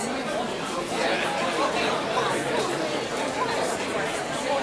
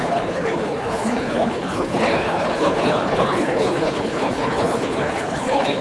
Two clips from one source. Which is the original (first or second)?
first